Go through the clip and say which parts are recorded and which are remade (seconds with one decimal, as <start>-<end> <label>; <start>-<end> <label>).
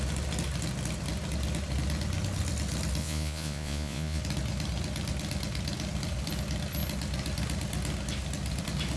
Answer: 0.0-3.0 recorded; 3.0-4.2 remade; 4.2-9.0 recorded